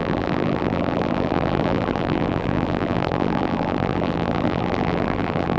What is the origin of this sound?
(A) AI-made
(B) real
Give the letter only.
A